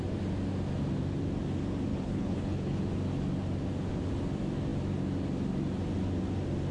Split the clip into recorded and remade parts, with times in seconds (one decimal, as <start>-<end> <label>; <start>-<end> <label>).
0.0-1.9 recorded; 1.9-2.8 remade; 2.8-6.7 recorded